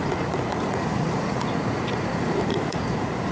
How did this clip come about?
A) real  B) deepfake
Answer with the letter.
B